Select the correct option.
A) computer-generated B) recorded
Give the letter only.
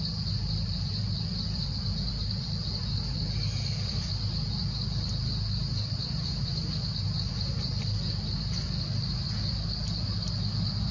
B